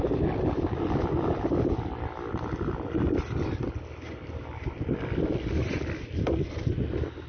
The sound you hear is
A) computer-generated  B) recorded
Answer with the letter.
B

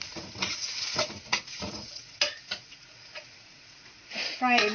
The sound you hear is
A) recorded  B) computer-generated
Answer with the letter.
B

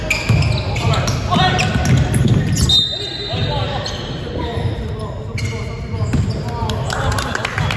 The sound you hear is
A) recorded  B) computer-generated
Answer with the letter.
A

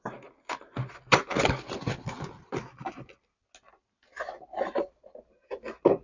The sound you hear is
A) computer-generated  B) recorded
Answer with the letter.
B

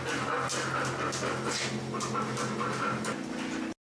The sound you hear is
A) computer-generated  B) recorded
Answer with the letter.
B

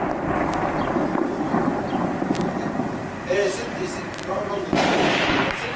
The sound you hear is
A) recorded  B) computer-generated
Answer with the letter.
A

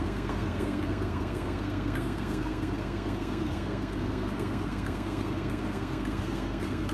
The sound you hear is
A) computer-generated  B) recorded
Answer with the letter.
A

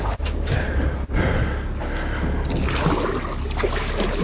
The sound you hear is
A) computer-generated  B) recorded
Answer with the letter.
B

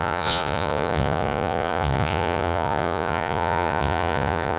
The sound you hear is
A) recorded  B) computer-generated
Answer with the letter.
B